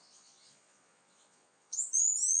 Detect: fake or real fake